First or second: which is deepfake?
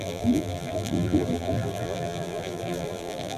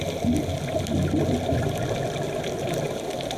first